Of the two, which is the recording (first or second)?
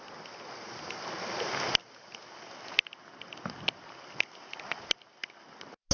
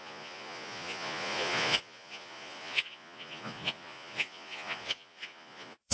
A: first